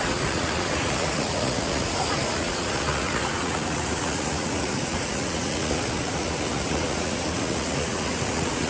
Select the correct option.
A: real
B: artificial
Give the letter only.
B